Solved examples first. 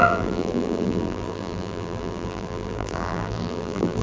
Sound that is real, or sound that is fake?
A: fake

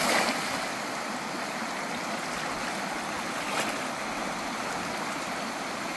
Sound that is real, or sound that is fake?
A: real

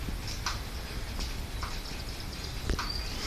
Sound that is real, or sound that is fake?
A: real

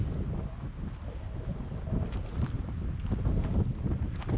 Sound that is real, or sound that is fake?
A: real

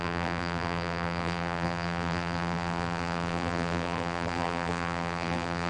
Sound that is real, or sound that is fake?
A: fake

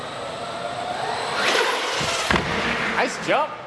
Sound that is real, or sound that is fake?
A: fake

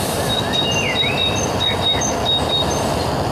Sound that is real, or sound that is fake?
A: real